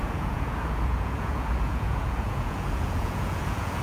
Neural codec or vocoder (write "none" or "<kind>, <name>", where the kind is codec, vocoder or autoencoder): vocoder, Vocos